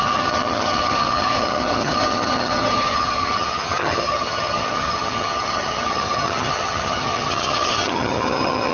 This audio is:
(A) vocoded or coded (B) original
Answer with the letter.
A